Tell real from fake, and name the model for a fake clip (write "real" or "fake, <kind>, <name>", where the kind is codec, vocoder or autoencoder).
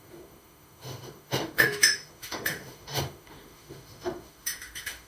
fake, autoencoder, DAC-VAE